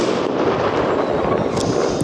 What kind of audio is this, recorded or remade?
recorded